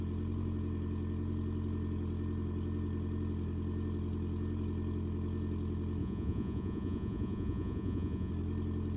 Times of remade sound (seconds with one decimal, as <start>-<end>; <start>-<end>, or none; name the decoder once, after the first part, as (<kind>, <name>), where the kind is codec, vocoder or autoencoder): 6.0-8.3 (vocoder, Vocos)

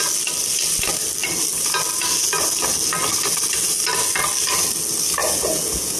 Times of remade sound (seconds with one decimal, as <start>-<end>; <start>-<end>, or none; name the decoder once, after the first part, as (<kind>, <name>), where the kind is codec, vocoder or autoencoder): 5.2-6.0 (vocoder, Vocos)